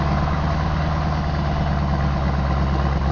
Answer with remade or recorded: recorded